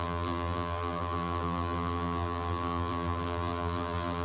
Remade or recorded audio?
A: remade